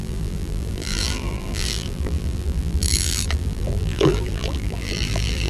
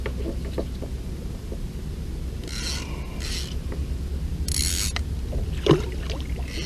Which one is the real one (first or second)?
second